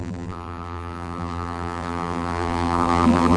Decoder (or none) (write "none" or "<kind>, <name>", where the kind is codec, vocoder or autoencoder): vocoder, BigVGAN v2